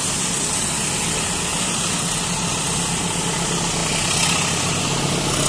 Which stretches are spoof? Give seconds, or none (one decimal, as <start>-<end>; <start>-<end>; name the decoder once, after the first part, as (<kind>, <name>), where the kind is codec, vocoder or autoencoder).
none